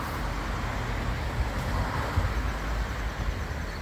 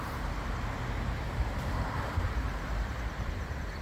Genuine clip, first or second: first